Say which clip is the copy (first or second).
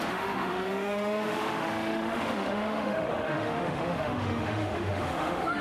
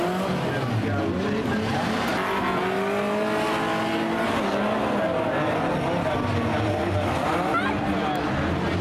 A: first